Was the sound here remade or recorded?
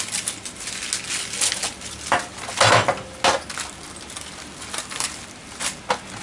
recorded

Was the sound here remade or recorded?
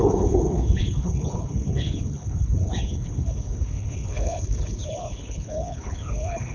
remade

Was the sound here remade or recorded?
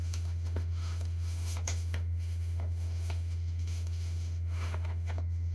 remade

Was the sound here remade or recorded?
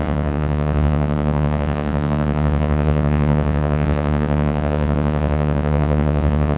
remade